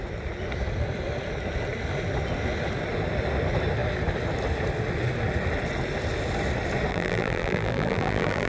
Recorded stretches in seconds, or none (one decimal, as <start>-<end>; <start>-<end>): 0.0-6.9